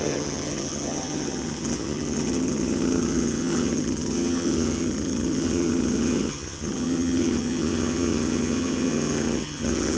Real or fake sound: fake